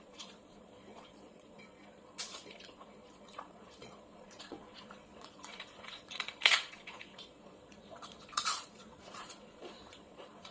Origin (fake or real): fake